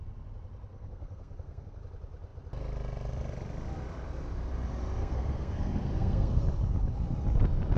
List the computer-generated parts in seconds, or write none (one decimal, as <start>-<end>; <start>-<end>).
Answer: 0.7-1.8; 5.0-6.4